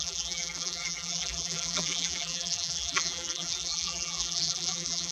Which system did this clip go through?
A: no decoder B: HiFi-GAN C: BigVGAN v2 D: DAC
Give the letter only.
C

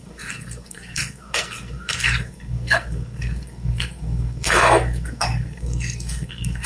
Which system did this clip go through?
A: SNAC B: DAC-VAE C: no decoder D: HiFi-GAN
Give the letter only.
A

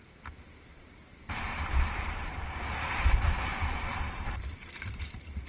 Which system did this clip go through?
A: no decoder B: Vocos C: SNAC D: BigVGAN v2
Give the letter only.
D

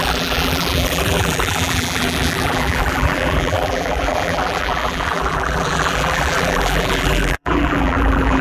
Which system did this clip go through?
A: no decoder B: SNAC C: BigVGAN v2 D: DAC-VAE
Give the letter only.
C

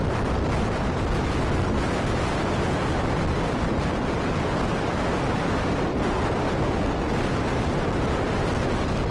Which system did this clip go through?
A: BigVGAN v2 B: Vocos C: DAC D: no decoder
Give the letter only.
D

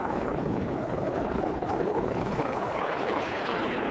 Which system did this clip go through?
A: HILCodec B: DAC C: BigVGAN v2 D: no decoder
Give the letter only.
A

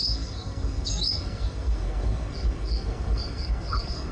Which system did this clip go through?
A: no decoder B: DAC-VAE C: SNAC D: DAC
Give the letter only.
C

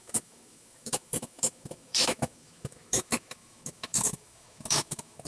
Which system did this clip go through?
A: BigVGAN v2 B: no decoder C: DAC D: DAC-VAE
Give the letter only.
D